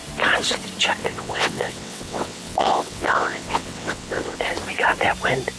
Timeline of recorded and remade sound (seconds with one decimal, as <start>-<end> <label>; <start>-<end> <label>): 0.0-1.0 recorded; 1.0-4.4 remade; 4.4-5.6 recorded